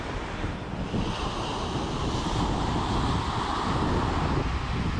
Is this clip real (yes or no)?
yes